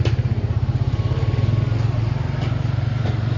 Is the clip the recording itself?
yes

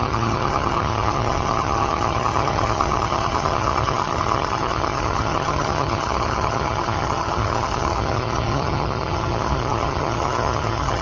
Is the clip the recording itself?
no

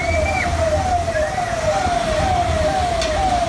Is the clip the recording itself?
yes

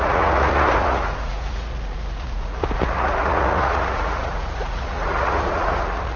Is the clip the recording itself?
no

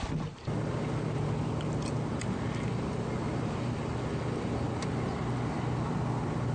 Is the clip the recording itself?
yes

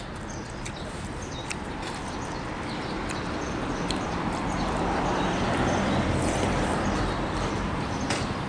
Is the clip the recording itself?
no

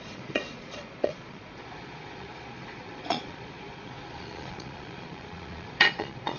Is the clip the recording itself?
no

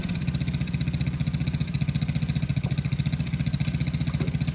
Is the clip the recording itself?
yes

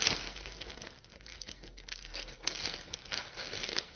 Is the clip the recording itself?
no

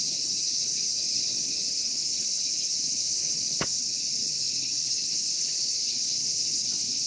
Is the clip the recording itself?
no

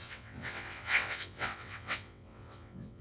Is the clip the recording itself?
no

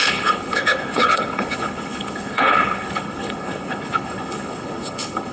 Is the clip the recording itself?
no